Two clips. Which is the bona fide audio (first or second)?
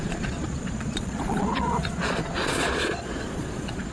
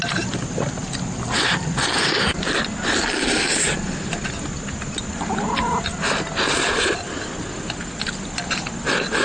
second